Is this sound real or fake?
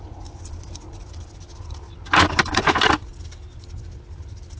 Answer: real